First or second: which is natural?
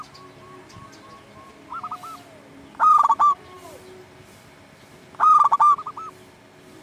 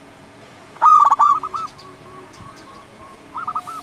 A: first